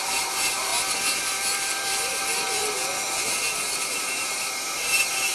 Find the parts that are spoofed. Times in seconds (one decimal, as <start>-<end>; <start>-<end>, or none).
0.0-0.7; 3.9-5.3